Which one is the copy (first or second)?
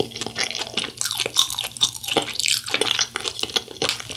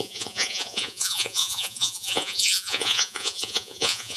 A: second